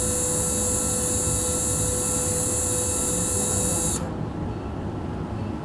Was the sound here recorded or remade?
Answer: recorded